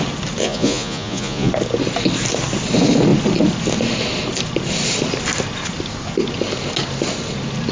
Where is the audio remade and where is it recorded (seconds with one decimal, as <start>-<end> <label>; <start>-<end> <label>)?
0.0-0.4 recorded; 0.4-1.5 remade; 1.5-7.7 recorded